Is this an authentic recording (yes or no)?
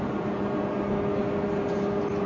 yes